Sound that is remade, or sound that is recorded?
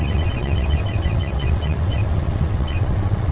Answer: remade